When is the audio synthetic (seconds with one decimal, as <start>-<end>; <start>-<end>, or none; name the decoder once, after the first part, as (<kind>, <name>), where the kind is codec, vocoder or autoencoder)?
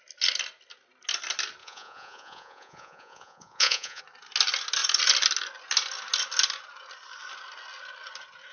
1.6-4.0 (vocoder, Vocos)